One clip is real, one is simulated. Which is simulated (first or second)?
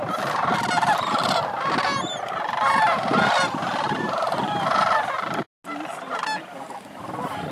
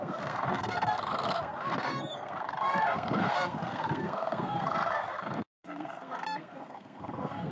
second